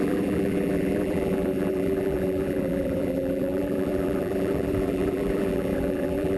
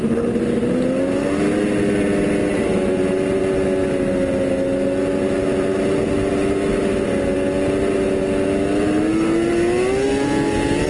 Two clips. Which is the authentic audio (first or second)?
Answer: second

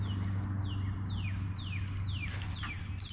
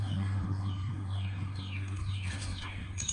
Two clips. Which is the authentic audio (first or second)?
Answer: first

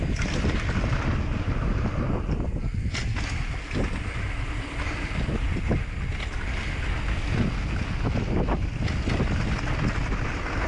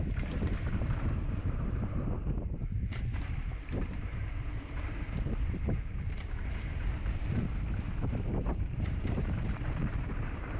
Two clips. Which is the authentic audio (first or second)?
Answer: first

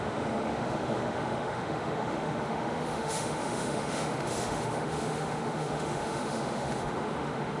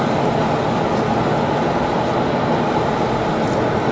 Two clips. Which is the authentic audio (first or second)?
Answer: second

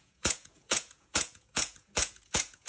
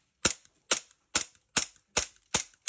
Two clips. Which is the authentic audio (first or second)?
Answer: second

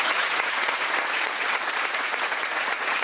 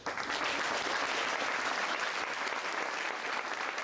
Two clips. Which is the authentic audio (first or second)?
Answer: second